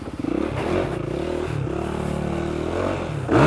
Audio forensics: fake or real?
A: real